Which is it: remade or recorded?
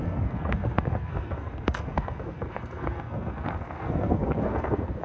remade